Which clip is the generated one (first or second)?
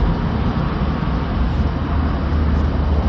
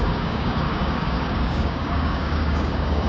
second